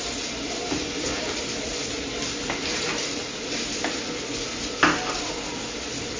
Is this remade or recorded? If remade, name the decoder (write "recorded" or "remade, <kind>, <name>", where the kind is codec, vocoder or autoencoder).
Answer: remade, vocoder, BigVGAN v2